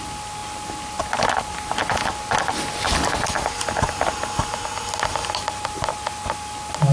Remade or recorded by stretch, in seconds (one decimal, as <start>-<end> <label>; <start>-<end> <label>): 0.0-6.9 recorded